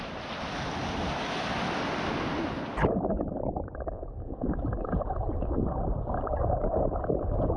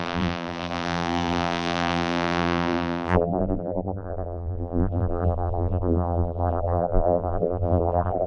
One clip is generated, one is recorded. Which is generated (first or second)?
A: second